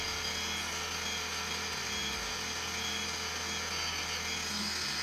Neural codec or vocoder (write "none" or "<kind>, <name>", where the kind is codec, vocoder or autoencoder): none